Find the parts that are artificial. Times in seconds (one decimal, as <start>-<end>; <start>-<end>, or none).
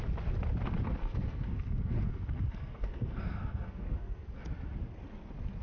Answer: 1.0-4.4